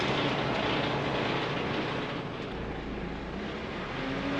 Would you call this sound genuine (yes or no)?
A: yes